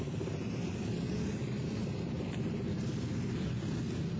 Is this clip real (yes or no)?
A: yes